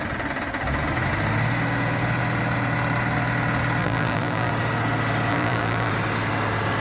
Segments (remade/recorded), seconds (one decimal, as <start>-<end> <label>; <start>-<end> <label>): 0.0-3.8 recorded; 3.8-4.5 remade; 4.5-5.3 recorded; 5.3-5.9 remade; 5.9-6.8 recorded